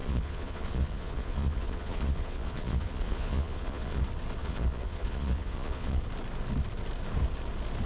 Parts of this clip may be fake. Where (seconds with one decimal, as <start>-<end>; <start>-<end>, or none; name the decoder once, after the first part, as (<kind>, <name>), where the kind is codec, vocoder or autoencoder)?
0.0-4.0 (vocoder, Vocos); 4.4-6.0